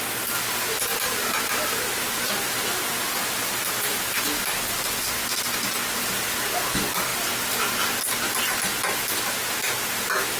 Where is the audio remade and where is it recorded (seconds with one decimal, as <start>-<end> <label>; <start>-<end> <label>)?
0.0-0.9 recorded; 0.9-4.5 remade; 4.5-10.4 recorded

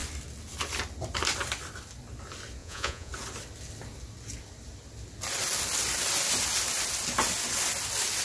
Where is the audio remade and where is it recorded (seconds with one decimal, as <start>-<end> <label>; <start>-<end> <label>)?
0.0-2.6 recorded; 2.6-3.1 remade; 3.1-8.2 recorded